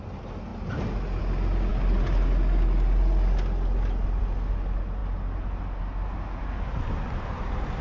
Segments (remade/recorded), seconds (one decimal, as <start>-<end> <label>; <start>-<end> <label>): 0.0-7.8 recorded